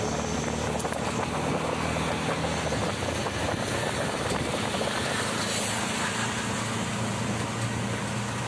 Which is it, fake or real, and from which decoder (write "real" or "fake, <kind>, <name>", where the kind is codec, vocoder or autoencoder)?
real